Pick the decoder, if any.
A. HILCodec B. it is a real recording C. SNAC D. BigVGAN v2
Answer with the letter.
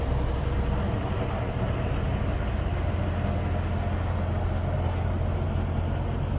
B